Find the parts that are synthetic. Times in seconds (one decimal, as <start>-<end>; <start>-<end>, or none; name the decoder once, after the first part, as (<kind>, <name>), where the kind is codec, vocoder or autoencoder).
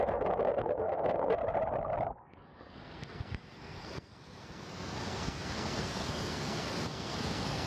0.0-1.4 (codec, SNAC); 2.2-7.7